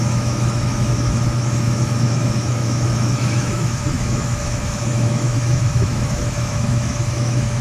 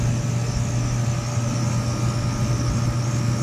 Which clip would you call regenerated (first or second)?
first